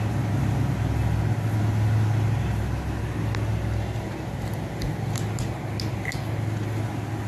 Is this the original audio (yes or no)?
yes